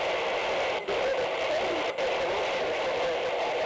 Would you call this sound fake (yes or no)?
no